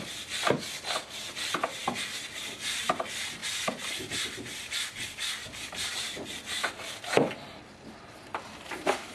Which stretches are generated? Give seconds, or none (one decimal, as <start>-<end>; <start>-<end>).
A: none